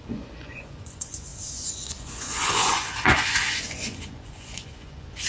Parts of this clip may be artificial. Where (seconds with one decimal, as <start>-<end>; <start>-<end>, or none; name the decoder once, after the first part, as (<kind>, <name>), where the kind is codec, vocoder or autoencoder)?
0.0-5.3 (vocoder, Vocos)